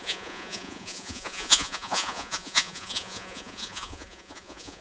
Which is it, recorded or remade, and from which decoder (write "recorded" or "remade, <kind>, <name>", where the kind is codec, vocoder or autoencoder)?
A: remade, vocoder, Vocos